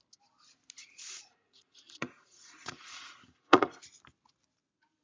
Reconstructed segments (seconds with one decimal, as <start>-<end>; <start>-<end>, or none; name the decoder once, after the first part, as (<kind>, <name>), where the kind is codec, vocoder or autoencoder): 0.8-3.8 (vocoder, Vocos)